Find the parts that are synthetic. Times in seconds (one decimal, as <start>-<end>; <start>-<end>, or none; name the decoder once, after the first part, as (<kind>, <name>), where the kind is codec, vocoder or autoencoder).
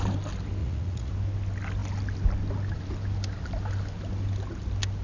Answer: 0.6-1.1 (vocoder, Vocos)